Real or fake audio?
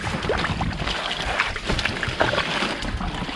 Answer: real